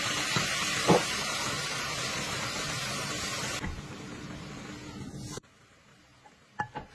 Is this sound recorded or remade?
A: recorded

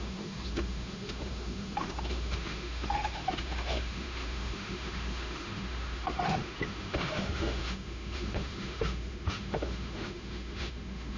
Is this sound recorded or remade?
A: remade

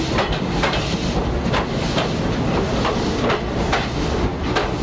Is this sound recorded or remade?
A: recorded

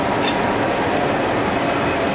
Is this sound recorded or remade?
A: recorded